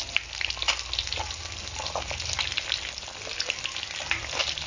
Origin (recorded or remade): recorded